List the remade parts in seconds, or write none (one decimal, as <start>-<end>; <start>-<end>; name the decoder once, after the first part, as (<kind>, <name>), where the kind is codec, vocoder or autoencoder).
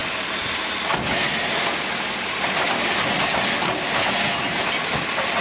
none